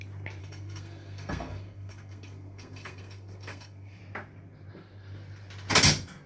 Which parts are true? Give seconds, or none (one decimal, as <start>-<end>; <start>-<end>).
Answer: 0.0-0.4; 4.0-6.3